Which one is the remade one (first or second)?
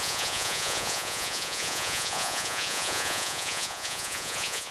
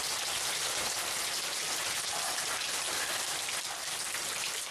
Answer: first